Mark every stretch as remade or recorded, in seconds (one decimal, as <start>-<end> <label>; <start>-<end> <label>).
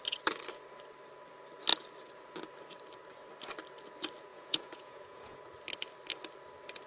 0.0-4.3 recorded; 4.3-5.4 remade; 5.4-6.9 recorded